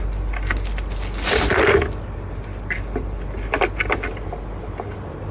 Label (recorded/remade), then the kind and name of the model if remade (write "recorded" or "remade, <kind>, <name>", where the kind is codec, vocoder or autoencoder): recorded